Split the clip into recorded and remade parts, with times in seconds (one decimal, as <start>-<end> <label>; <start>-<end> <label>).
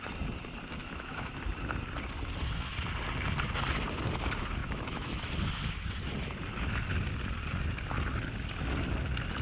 0.0-0.8 recorded; 0.8-1.3 remade; 1.3-4.6 recorded; 4.6-5.3 remade; 5.3-9.4 recorded